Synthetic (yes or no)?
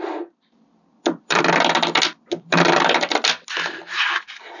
no